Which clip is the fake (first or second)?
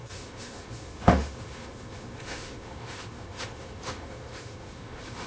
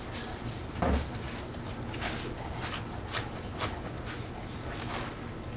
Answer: first